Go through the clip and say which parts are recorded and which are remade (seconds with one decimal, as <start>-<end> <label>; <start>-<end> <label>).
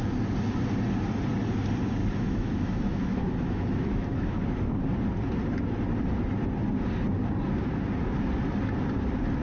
0.0-2.0 recorded; 2.0-4.4 remade; 4.4-9.4 recorded